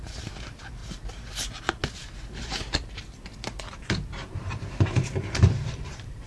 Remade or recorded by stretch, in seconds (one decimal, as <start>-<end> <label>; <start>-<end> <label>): 0.0-0.8 remade; 0.8-4.3 recorded; 4.3-6.3 remade